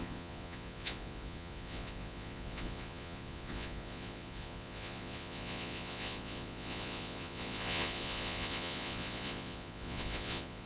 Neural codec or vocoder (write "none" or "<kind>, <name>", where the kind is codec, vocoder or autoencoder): vocoder, Vocos